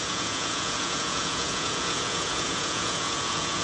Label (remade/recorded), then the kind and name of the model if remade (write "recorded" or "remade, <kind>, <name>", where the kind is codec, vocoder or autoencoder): remade, vocoder, Vocos